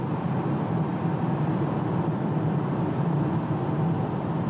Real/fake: real